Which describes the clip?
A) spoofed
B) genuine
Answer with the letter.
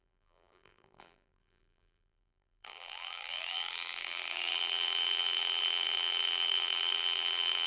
A